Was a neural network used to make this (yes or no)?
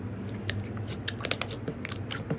no